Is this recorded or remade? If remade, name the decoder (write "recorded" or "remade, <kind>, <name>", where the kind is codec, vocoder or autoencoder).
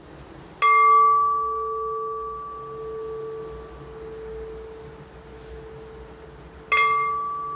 recorded